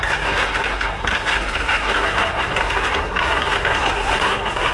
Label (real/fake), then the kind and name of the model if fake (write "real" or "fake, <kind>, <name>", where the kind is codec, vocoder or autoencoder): fake, codec, SNAC